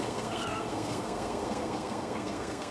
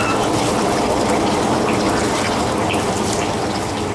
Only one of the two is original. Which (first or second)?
second